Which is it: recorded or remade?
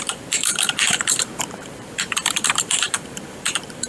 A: remade